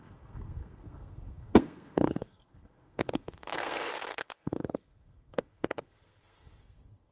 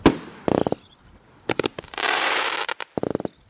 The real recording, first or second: second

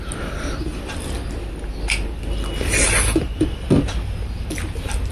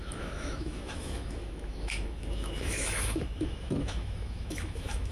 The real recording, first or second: first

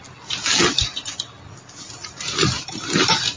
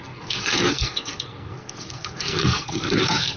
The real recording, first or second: first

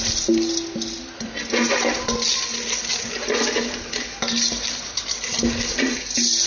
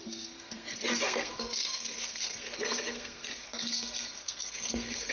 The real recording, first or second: first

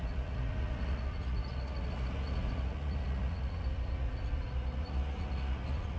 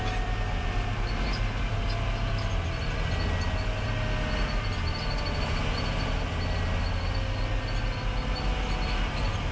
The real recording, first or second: second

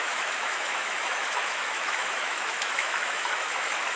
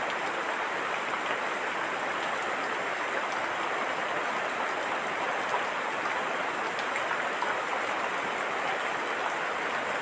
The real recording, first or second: second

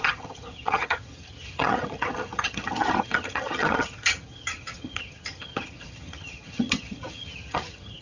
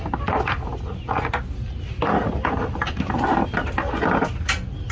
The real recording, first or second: second